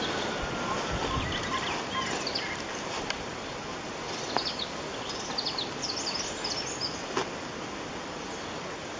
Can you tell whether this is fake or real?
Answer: real